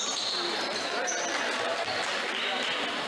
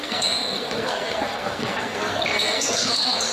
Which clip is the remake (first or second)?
second